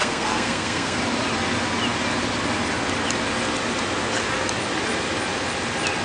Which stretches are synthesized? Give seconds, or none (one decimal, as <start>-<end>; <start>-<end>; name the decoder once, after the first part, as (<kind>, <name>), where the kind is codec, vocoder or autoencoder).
0.0-1.0 (codec, SNAC)